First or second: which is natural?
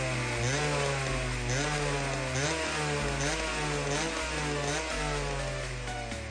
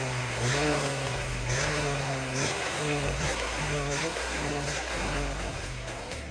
first